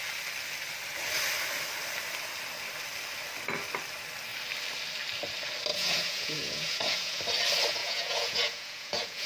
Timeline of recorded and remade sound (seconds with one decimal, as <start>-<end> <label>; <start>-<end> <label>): 0.0-5.7 recorded; 5.7-7.2 remade; 7.2-7.8 recorded; 7.8-9.3 remade